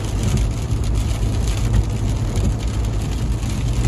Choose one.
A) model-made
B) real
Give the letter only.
B